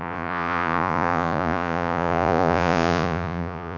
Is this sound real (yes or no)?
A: no